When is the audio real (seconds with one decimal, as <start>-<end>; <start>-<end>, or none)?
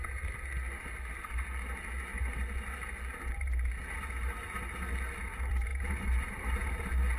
0.0-5.7; 6.7-7.2